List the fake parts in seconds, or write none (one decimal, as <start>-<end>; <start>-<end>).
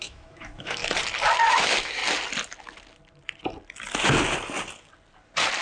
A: 0.0-0.8; 1.5-2.0